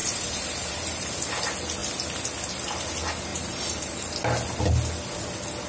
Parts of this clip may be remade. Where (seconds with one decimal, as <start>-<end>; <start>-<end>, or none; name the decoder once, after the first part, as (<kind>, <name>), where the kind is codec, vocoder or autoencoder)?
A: 0.0-1.1 (vocoder, BigVGAN v2); 3.3-4.1